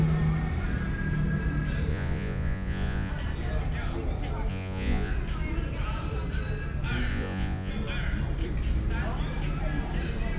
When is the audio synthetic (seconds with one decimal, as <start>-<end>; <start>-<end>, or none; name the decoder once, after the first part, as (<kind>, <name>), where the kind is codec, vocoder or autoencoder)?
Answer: 1.9-3.1 (vocoder, Vocos); 4.5-5.1; 7.1-7.7